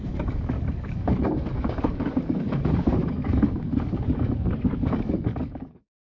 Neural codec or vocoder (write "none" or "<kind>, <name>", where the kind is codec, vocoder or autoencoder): codec, DAC